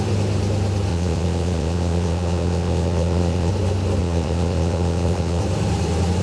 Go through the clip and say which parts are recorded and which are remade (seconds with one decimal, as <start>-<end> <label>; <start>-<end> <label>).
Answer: 0.0-0.9 recorded; 0.9-3.5 remade; 3.5-4.0 recorded; 4.0-5.4 remade; 5.4-6.2 recorded